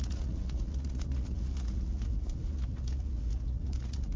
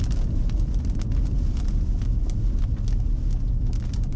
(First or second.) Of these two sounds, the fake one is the first